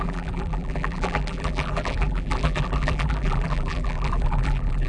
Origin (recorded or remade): remade